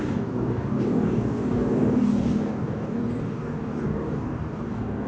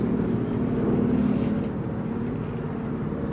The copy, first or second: first